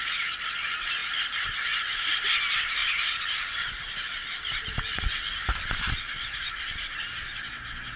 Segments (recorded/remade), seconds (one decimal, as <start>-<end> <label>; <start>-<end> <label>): 0.0-2.8 recorded; 2.8-3.8 remade; 3.8-8.0 recorded